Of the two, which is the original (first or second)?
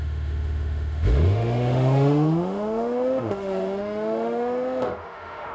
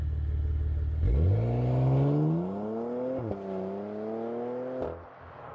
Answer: second